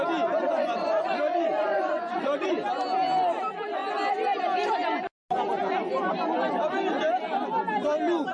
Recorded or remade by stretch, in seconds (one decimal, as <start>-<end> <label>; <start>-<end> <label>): 0.0-0.4 recorded; 0.4-2.5 remade; 2.5-8.3 recorded

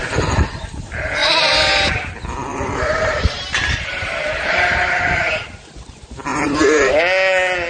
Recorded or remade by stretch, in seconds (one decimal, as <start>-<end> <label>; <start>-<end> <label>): 0.0-1.2 recorded; 1.2-1.9 remade; 1.9-2.5 recorded; 2.5-5.3 remade; 5.3-6.3 recorded; 6.3-7.0 remade; 7.0-7.7 recorded

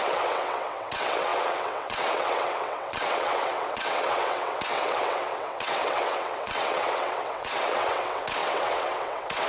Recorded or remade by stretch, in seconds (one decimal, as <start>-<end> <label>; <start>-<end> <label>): 0.0-9.5 remade

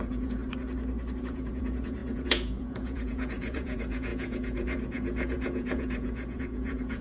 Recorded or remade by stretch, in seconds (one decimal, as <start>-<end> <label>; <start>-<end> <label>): 0.0-0.4 remade; 0.4-1.2 recorded; 1.2-7.0 remade

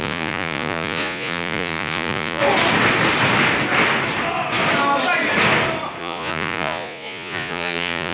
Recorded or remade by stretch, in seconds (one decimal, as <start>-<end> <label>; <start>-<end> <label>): 0.0-2.4 remade; 2.4-6.0 recorded; 6.0-8.1 remade